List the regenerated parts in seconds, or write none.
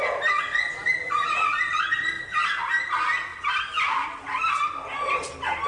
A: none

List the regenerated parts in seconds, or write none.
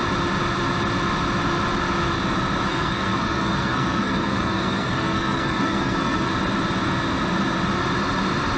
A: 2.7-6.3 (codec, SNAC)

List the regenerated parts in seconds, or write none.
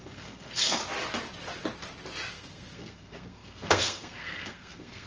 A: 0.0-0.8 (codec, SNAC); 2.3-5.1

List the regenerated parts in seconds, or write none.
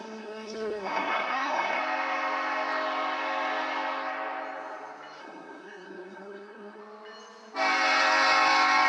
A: 0.0-1.8 (codec, SNAC); 5.2-6.8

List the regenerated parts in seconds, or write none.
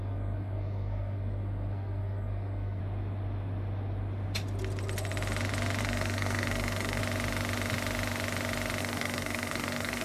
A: 0.0-2.8 (codec, SNAC); 5.8-7.0; 8.8-10.0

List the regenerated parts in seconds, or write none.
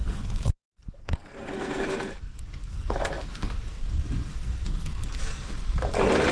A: 0.0-3.8 (codec, SNAC); 4.3-5.5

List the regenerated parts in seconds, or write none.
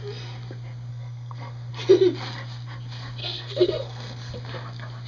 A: 0.9-1.7 (codec, SNAC); 3.2-4.3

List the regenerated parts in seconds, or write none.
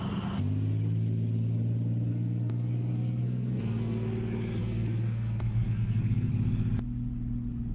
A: 2.1-4.1 (codec, SNAC); 4.6-6.3